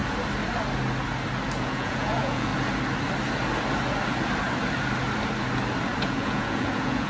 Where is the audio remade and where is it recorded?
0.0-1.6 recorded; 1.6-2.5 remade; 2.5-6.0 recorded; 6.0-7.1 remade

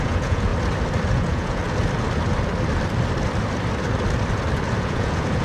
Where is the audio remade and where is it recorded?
0.0-0.5 remade; 0.5-1.1 recorded; 1.1-1.6 remade; 1.6-4.8 recorded; 4.8-5.4 remade

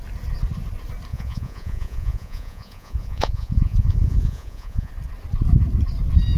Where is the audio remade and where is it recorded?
0.0-1.1 recorded; 1.1-4.9 remade; 4.9-6.4 recorded

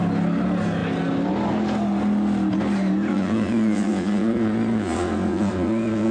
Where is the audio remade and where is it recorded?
0.0-3.1 recorded; 3.1-6.1 remade

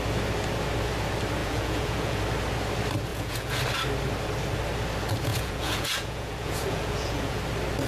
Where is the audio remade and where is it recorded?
0.0-1.4 recorded; 1.4-2.2 remade; 2.2-3.1 recorded; 3.1-3.6 remade; 3.6-5.3 recorded; 5.3-7.4 remade; 7.4-7.9 recorded

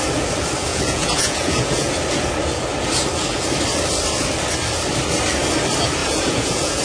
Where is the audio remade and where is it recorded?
0.0-0.7 recorded; 0.7-1.9 remade; 1.9-6.0 recorded; 6.0-6.8 remade

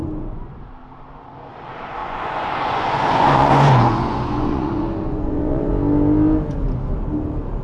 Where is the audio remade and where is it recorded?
0.0-0.6 remade; 0.6-2.0 recorded; 2.0-5.7 remade; 5.7-7.6 recorded

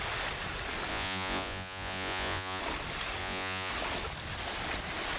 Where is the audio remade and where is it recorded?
0.0-0.9 recorded; 0.9-2.6 remade; 2.6-3.2 recorded; 3.2-3.7 remade; 3.7-5.2 recorded